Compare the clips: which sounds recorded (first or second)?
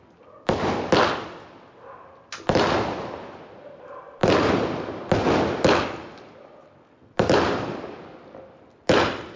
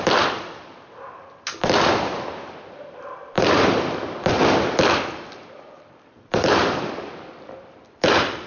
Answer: first